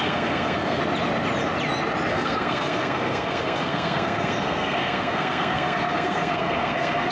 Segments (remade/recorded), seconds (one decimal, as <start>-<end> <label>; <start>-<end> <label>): 0.0-0.8 remade; 0.8-2.1 recorded; 2.1-7.1 remade